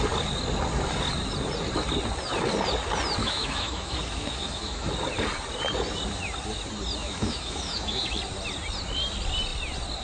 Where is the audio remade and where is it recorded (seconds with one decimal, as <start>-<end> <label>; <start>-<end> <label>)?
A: 0.0-3.2 recorded; 3.2-4.9 remade; 4.9-7.0 recorded; 7.0-8.1 remade; 8.1-10.0 recorded